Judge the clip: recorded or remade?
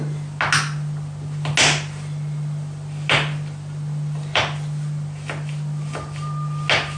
recorded